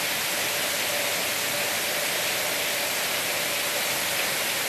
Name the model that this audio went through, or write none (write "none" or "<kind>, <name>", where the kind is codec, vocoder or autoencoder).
none